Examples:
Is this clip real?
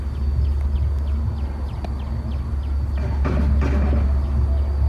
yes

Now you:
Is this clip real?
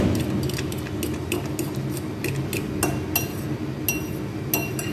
yes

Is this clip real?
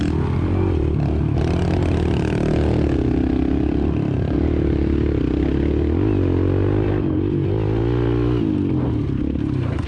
yes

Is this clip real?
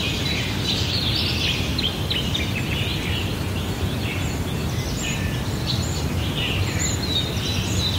yes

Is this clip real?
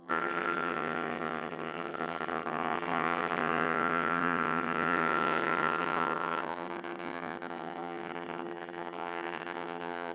no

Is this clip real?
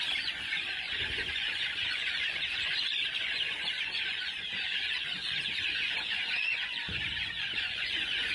no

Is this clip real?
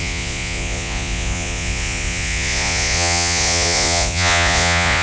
no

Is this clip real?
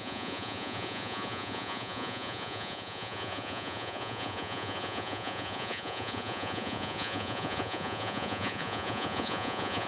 no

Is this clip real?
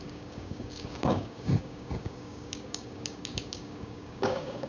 no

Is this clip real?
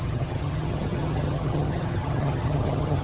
no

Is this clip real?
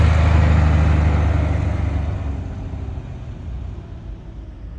yes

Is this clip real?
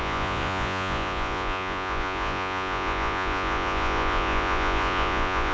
no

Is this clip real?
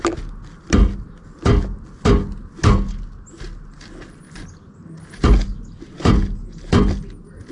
yes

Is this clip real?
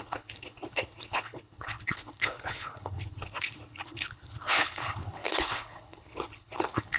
no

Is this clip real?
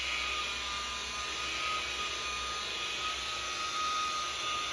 yes